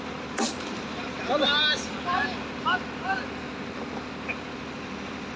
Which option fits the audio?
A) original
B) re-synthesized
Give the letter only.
A